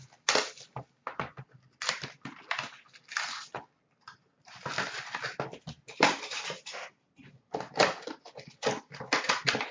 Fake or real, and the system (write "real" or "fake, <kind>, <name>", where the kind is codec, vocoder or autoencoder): real